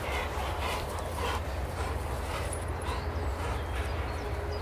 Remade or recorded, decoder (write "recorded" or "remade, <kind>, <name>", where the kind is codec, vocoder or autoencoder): recorded